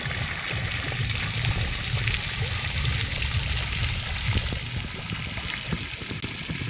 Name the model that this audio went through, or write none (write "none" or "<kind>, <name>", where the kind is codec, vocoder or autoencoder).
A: none